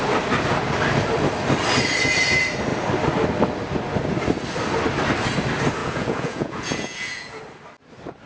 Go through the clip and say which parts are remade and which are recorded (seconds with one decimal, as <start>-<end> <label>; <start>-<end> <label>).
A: 0.0-5.8 recorded; 5.8-7.4 remade; 7.4-8.3 recorded